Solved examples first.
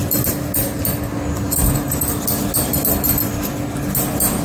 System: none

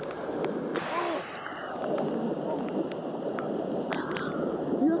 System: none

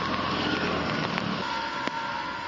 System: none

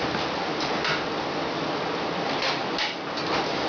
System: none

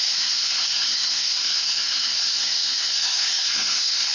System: codec, SNAC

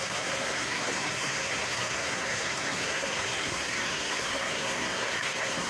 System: codec, SNAC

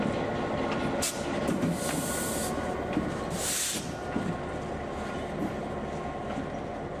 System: none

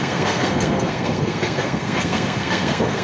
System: codec, SNAC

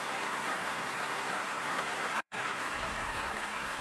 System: codec, SNAC